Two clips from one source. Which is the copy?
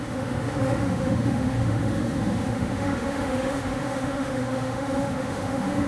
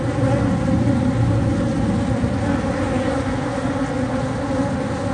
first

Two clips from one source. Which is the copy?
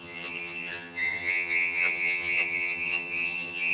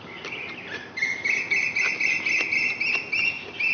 first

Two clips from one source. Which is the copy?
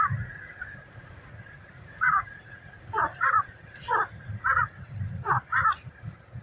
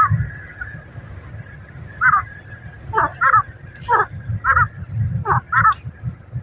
first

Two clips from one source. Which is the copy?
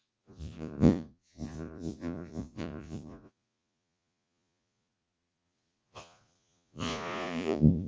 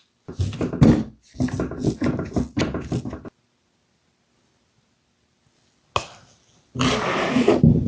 first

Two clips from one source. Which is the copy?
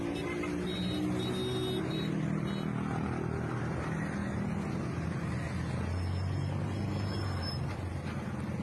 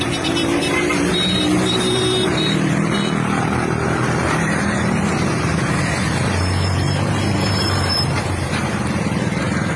second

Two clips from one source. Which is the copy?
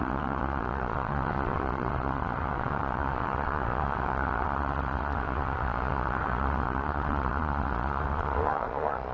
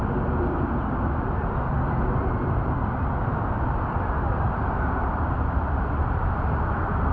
first